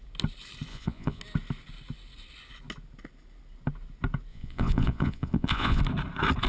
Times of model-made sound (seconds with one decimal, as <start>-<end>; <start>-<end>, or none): 0.7-1.2; 4.3-5.8